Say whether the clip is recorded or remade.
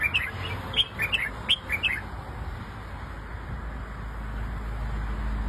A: recorded